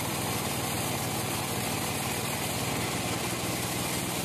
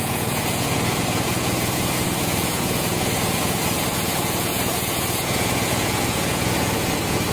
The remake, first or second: second